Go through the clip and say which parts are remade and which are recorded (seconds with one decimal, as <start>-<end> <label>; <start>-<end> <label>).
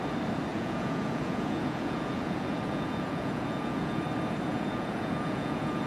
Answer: 0.0-0.5 recorded; 0.5-4.0 remade; 4.0-4.5 recorded; 4.5-5.9 remade